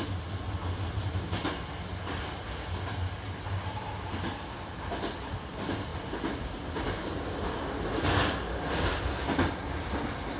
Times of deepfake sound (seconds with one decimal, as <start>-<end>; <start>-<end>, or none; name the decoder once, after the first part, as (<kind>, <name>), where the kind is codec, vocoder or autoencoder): none